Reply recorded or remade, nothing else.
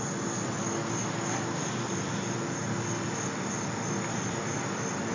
recorded